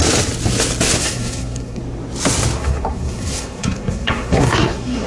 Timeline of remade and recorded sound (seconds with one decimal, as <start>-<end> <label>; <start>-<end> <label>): 0.0-1.0 recorded; 1.0-1.8 remade; 1.8-2.6 recorded; 2.6-5.1 remade